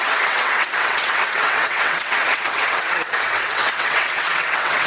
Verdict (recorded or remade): remade